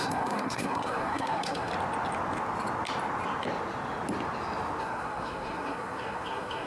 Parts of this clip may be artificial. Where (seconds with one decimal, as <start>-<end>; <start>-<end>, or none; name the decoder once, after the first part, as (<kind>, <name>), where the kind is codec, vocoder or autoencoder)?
0.0-1.7 (codec, SNAC); 4.8-6.7

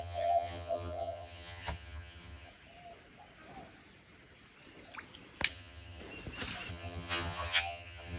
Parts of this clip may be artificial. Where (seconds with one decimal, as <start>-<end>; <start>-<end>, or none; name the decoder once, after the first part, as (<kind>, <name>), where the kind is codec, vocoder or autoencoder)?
0.0-2.5 (vocoder, HiFi-GAN); 5.5-6.0; 6.7-8.2

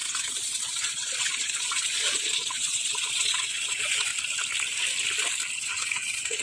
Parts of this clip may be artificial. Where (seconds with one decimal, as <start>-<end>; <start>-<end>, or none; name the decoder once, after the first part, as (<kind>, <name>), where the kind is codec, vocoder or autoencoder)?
0.0-4.1 (vocoder, Vocos); 5.6-6.4

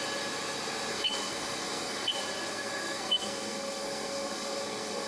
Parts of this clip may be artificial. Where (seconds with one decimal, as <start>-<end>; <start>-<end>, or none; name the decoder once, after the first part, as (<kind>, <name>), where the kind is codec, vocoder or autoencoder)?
0.9-2.1 (codec, SNAC); 2.5-5.1

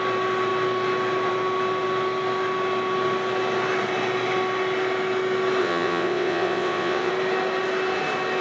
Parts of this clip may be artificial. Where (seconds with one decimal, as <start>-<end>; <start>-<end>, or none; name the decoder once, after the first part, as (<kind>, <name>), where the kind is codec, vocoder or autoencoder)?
5.6-7.1 (vocoder, WaveNeXt)

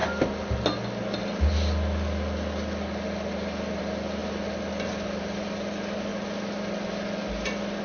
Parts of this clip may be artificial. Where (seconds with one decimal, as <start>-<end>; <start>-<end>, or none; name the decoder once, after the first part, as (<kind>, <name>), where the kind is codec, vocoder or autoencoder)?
none

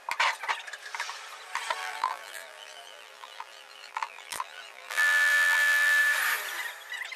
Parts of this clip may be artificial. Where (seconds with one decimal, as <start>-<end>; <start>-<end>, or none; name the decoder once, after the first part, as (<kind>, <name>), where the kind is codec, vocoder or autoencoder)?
1.8-6.0 (vocoder, BigVGAN v2)

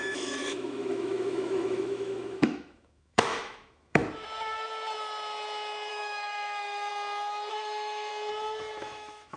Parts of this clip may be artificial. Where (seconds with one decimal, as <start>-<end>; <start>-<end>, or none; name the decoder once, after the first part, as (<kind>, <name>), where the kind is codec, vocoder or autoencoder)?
0.0-4.0 (autoencoder, DAC-VAE); 5.9-6.9; 7.5-8.1; 8.8-9.4